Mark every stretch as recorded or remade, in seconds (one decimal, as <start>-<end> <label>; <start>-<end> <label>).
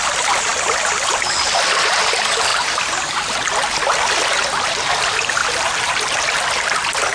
0.0-7.1 recorded